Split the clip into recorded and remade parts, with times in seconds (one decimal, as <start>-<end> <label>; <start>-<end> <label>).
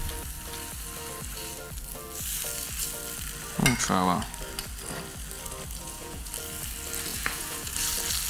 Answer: 0.0-5.8 recorded; 5.8-6.3 remade; 6.3-7.1 recorded; 7.1-7.7 remade; 7.7-8.3 recorded